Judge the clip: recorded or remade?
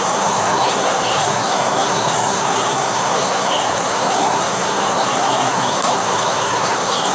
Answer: remade